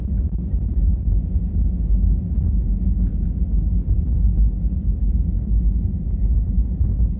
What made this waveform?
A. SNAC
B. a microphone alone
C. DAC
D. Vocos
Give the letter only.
B